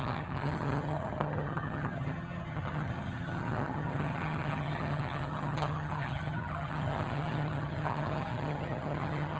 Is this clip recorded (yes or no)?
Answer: no